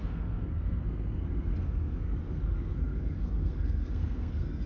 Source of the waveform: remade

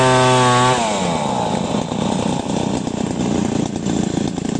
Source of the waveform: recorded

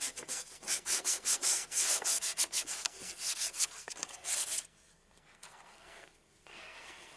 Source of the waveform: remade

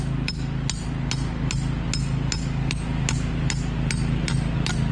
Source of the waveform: recorded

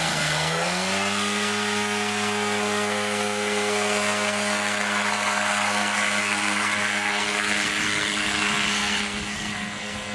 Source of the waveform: remade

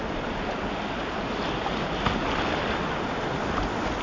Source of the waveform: recorded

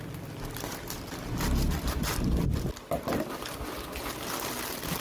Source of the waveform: recorded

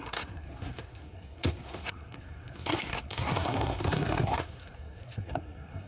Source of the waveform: remade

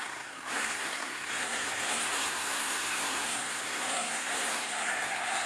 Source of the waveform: remade